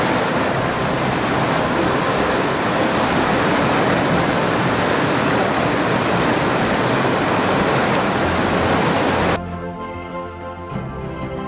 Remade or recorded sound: recorded